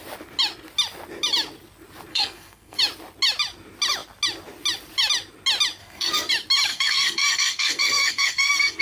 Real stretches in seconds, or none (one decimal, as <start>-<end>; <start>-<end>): 0.0-2.1; 2.8-5.8; 6.3-6.7